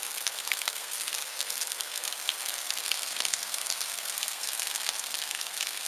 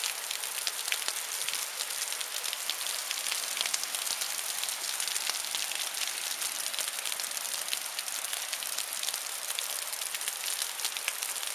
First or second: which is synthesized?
first